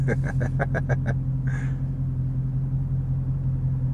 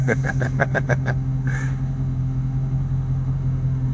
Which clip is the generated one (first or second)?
second